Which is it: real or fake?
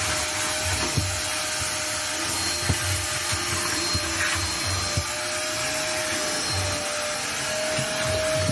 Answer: real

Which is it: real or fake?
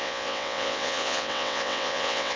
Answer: fake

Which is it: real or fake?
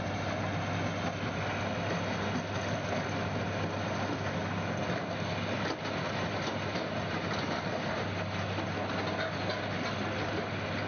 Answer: real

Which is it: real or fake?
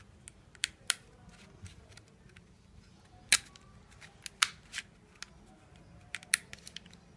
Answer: real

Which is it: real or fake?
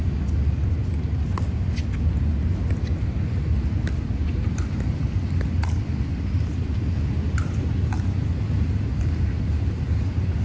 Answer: real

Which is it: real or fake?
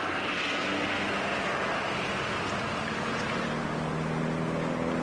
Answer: real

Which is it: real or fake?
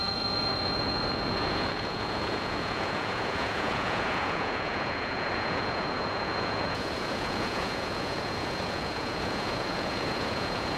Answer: fake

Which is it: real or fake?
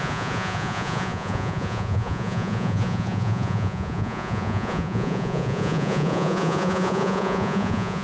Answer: fake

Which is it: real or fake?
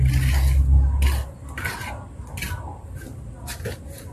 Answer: real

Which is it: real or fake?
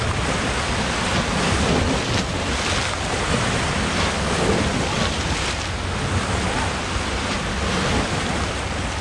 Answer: real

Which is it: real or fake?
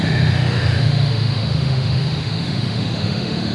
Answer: fake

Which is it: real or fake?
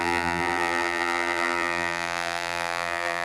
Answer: fake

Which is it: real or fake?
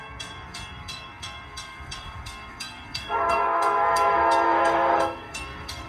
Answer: fake